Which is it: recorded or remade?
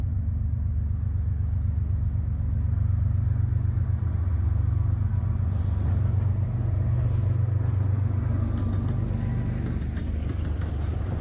recorded